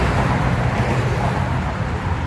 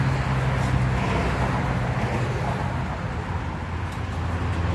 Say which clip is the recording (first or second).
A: second